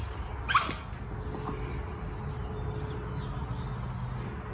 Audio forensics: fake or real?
real